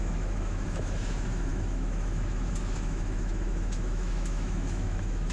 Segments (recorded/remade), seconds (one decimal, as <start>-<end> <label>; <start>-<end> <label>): 0.0-5.3 remade